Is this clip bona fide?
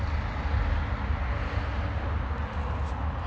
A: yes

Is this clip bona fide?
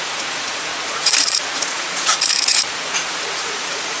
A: no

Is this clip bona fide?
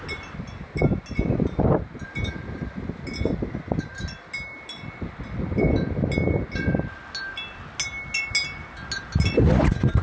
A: yes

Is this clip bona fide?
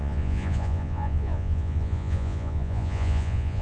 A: no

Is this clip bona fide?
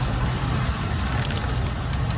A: yes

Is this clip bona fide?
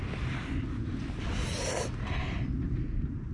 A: yes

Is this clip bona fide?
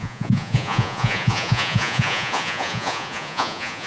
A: no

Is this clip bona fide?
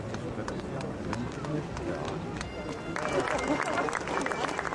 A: yes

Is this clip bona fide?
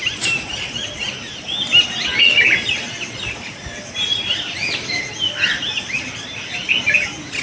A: yes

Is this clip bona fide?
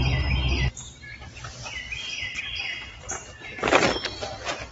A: yes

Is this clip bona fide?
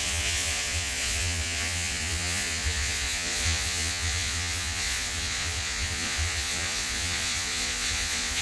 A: no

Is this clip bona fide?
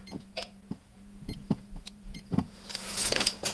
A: no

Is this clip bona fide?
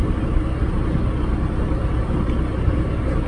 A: yes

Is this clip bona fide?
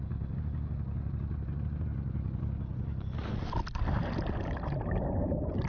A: yes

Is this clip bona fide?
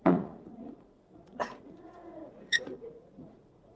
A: no